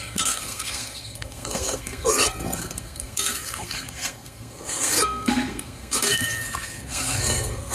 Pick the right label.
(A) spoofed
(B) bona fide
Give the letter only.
A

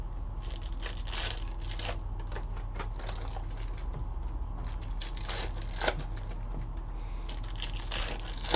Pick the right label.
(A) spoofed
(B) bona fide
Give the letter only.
B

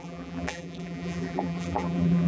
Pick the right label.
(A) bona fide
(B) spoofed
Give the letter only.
B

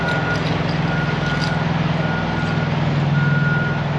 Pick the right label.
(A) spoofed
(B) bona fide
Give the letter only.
B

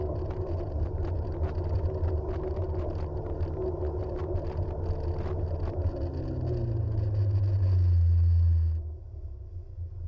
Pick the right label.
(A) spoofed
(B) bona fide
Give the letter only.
B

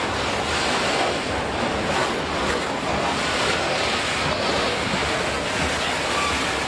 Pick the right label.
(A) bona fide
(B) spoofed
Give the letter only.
A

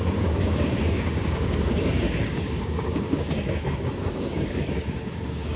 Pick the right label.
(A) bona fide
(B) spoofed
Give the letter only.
B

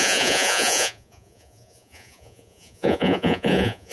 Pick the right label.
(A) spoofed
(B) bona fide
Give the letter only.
A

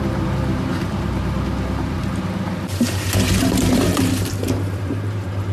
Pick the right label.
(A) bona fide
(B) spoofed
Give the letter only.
B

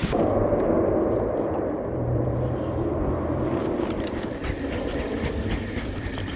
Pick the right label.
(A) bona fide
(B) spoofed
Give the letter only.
B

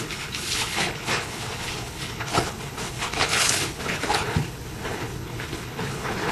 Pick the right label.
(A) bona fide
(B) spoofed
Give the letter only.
B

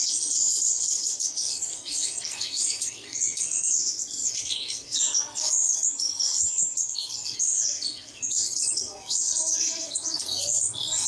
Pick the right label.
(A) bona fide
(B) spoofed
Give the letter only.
B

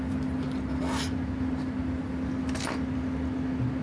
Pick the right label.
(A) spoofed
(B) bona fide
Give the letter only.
B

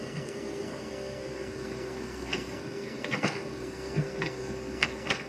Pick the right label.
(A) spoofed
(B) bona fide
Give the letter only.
A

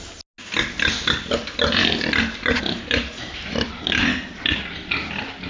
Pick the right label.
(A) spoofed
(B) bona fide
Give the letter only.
B